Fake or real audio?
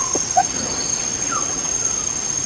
fake